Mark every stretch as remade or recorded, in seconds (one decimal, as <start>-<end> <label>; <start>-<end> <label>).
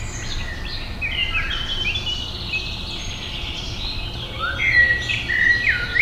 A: 0.0-6.0 recorded